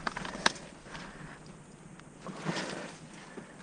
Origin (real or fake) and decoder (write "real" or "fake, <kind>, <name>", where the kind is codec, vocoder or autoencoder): real